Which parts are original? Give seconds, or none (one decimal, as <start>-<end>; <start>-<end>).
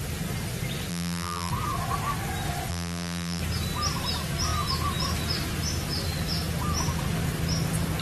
0.0-0.9; 1.5-2.7; 3.4-8.0